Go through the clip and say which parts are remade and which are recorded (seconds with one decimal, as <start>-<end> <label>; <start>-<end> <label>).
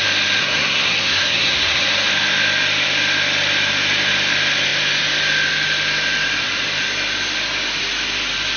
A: 0.0-0.4 recorded; 0.4-1.8 remade; 1.8-8.6 recorded